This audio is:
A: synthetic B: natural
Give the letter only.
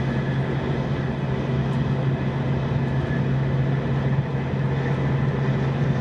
B